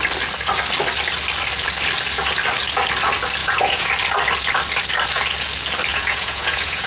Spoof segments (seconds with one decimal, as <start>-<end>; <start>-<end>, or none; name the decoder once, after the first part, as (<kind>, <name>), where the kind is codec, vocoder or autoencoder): 3.4-3.9 (vocoder, Vocos); 5.9-6.9